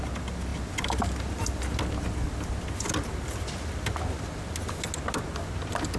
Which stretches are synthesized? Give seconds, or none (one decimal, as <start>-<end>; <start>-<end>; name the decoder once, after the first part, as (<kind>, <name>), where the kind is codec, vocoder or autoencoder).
none